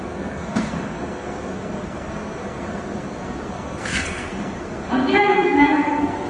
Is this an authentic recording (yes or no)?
no